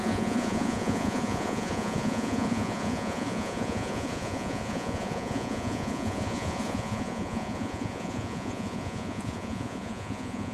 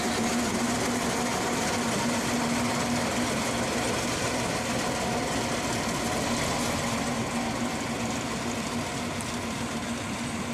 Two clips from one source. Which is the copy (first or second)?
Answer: first